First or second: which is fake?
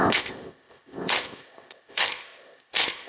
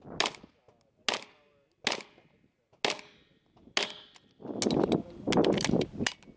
first